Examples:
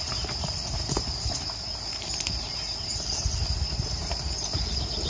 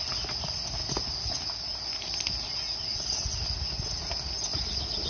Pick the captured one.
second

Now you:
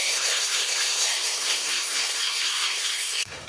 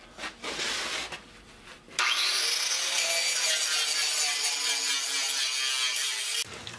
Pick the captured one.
second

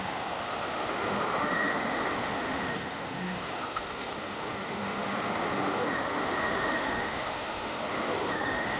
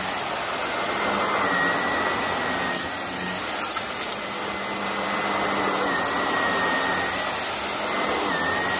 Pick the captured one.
second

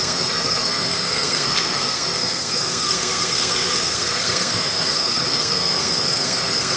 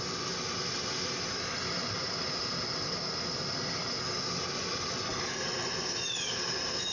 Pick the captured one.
second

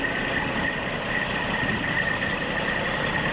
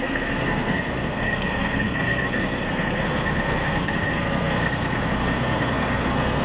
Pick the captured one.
first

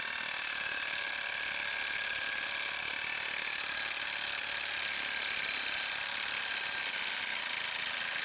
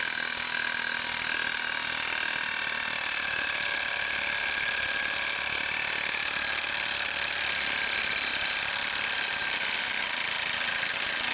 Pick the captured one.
first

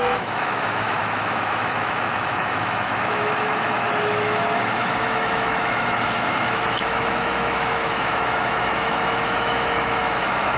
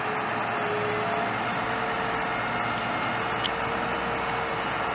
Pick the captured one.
second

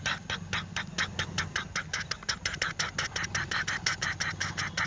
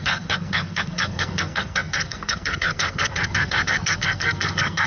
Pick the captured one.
first